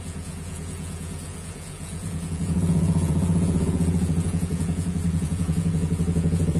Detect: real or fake fake